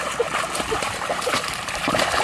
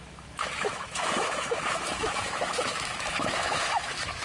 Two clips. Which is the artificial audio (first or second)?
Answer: second